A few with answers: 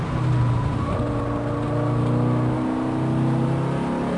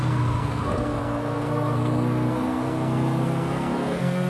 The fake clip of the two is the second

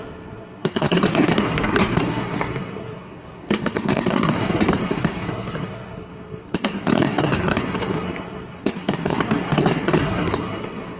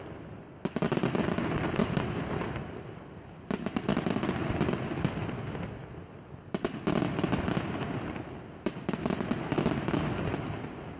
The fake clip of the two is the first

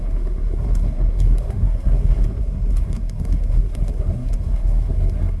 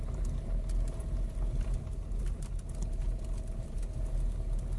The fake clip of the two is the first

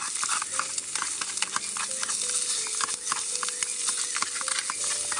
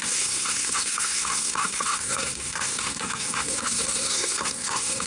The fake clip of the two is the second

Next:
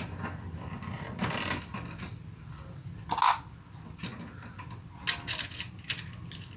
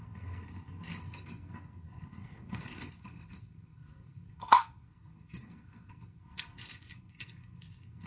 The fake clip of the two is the second